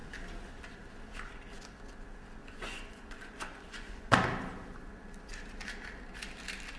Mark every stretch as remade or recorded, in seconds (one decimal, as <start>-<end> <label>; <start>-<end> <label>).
0.0-2.4 recorded; 2.4-4.1 remade; 4.1-6.8 recorded